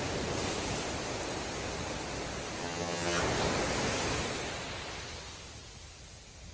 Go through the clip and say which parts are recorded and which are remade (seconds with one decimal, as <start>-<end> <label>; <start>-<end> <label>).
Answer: 0.0-2.6 recorded; 2.6-3.2 remade; 3.2-6.5 recorded